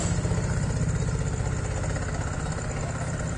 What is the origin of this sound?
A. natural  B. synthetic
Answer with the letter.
A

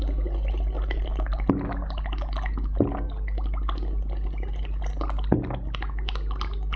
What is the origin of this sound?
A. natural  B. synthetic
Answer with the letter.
A